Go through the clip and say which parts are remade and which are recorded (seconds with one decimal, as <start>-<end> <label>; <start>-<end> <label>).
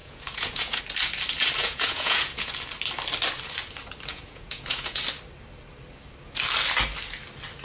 0.0-0.8 remade; 0.8-1.6 recorded; 1.6-2.5 remade; 2.5-4.1 recorded; 4.1-5.0 remade; 5.0-7.6 recorded